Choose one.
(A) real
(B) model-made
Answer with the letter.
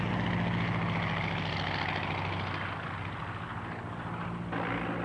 A